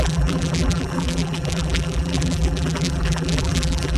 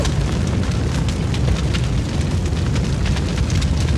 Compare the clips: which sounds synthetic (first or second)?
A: first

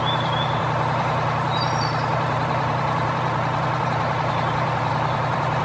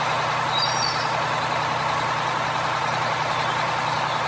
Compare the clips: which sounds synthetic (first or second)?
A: first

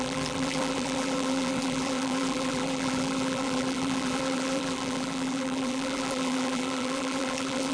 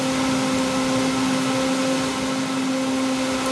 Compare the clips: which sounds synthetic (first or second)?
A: first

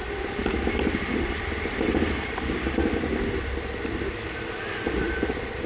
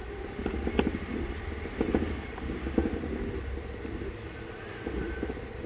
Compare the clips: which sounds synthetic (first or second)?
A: first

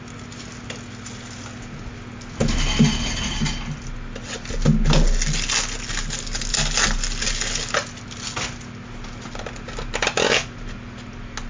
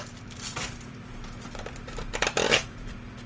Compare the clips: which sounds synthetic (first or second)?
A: second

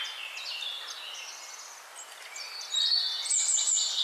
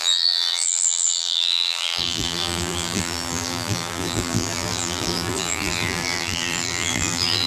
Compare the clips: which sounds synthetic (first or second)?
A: second